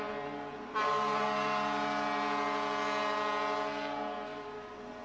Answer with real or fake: real